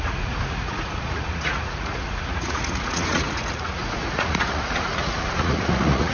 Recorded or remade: remade